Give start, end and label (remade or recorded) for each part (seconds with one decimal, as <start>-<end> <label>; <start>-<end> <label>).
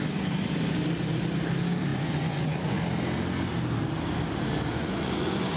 0.0-1.9 recorded; 1.9-2.8 remade; 2.8-4.7 recorded; 4.7-5.6 remade